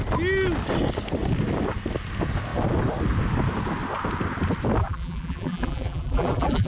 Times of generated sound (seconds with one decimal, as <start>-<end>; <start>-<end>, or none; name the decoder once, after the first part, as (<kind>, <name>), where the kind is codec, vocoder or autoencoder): 4.8-6.7 (vocoder, BigVGAN v2)